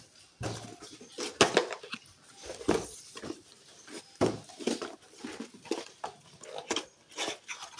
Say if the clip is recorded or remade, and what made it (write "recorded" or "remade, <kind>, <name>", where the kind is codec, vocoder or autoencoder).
recorded